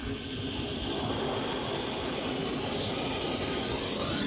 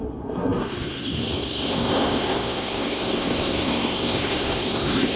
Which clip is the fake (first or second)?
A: second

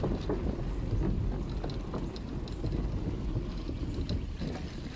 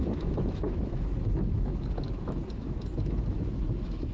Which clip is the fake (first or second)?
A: second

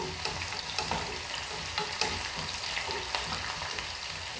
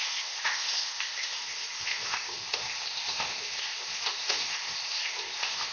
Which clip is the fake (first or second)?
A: second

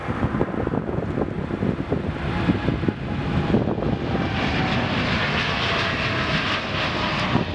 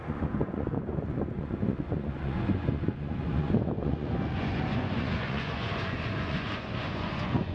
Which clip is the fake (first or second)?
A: second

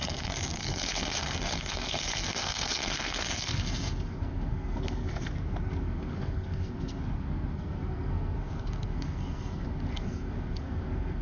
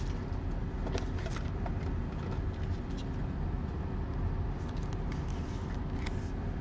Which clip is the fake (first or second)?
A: first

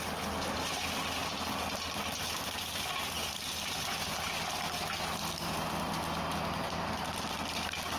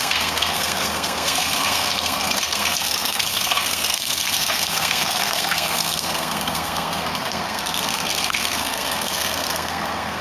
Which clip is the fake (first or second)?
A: second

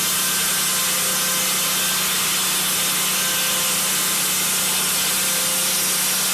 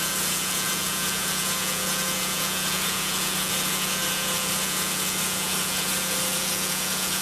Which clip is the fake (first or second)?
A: second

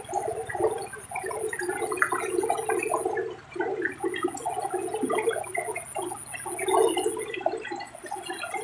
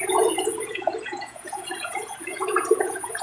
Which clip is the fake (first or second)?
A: second